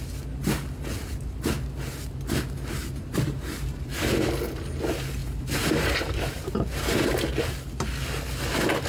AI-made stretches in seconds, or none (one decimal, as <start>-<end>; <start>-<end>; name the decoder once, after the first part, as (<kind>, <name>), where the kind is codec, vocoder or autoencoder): 2.8-4.3 (vocoder, BigVGAN v2); 5.2-7.3